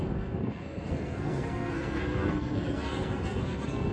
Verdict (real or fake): fake